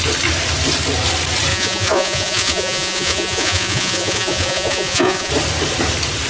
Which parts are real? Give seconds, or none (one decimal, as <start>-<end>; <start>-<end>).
0.0-1.5; 5.3-6.3